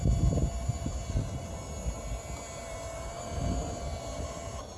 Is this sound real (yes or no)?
yes